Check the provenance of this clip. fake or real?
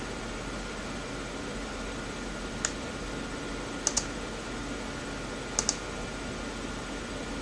real